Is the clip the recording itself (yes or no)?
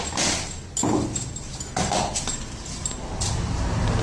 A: yes